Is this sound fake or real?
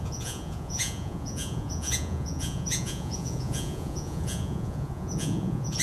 fake